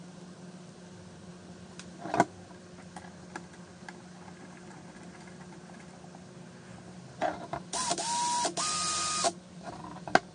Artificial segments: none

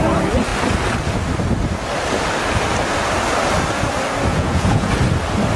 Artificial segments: 4.3-4.9 (vocoder, Vocos)

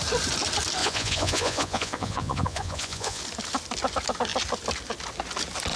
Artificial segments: 0.8-3.2 (vocoder, Vocos)

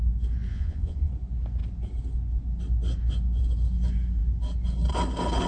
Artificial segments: 0.5-1.1 (vocoder, Vocos)

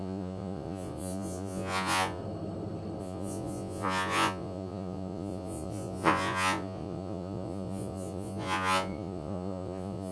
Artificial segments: 0.0-2.2 (vocoder, Vocos); 3.0-10.1

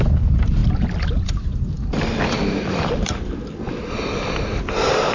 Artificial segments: none